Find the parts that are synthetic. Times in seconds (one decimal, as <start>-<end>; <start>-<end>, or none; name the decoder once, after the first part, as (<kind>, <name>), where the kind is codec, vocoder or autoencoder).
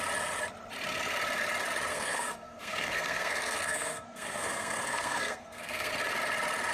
1.9-5.9 (codec, SNAC)